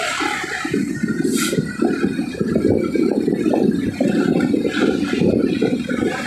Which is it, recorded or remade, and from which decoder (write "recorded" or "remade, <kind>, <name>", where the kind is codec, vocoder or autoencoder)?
recorded